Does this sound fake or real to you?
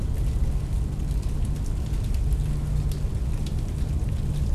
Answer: real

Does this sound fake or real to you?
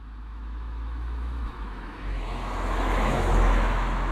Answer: fake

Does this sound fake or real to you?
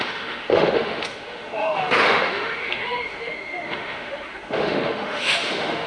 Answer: fake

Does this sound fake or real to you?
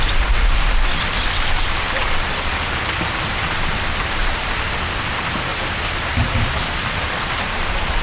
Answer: real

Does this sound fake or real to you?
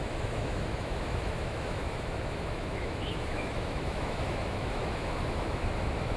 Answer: fake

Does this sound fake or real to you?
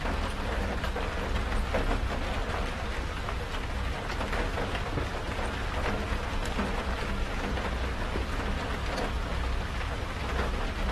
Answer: real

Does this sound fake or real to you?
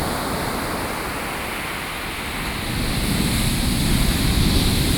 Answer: real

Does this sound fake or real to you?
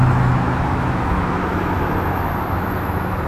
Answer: fake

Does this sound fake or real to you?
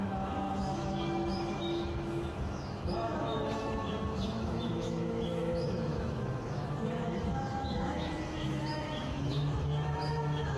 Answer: fake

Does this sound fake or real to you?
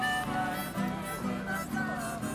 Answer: real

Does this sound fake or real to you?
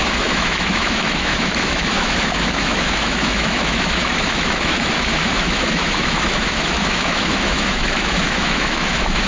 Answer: fake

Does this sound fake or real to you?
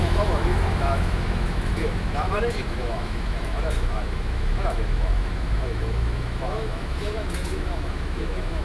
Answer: fake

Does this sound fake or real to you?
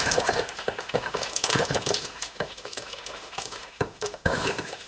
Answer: fake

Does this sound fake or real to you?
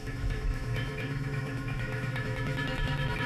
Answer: fake